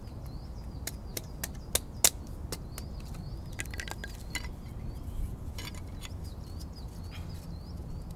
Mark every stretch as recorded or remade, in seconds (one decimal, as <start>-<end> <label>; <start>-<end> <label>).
0.0-8.2 recorded